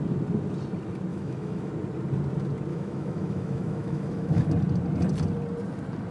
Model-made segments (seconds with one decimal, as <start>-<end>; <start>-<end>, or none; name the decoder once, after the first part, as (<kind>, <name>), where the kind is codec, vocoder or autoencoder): 1.1-1.7 (autoencoder, DAC-VAE); 2.7-4.5